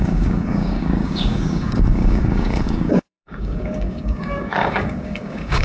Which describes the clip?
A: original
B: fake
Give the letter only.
B